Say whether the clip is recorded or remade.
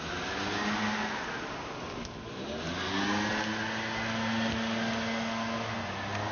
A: recorded